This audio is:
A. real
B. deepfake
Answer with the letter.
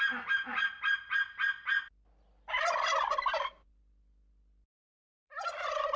A